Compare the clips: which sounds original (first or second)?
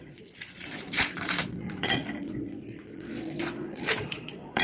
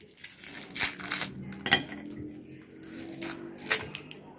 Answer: second